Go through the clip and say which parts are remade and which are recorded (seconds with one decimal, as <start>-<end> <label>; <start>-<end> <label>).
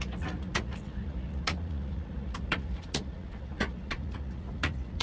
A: 0.0-5.0 remade